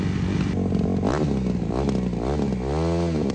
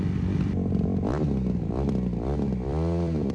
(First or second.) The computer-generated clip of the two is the second